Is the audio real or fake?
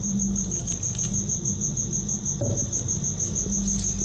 real